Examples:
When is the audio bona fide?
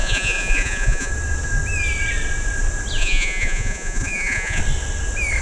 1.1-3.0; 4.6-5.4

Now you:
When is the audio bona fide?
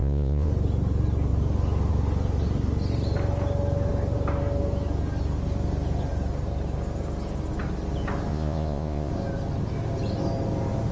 0.5-8.3; 9.1-10.9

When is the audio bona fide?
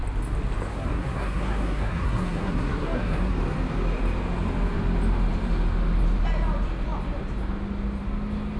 0.0-0.7; 3.3-8.6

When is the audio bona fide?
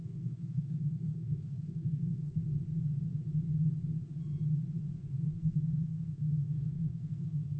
2.4-5.0